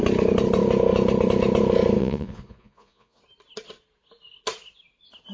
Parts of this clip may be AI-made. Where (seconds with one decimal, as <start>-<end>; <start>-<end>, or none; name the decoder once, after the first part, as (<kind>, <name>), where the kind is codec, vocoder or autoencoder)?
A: 2.0-3.2 (vocoder, Vocos)